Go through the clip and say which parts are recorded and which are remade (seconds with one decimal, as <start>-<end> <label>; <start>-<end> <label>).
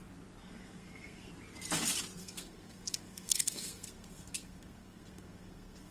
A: 0.0-0.4 recorded; 0.4-1.3 remade; 1.3-2.2 recorded; 2.2-5.9 remade